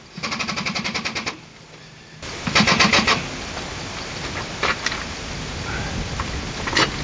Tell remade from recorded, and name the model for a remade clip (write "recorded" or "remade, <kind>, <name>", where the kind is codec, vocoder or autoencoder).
recorded